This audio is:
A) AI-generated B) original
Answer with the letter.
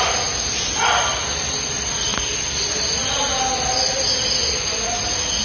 B